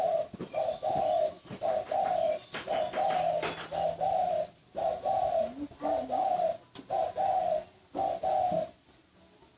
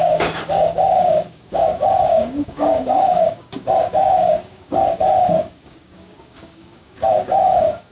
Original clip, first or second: first